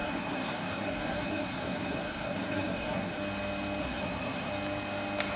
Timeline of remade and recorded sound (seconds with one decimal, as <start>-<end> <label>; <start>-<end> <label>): 0.0-3.2 remade; 3.2-3.8 recorded; 3.8-4.5 remade; 4.5-5.4 recorded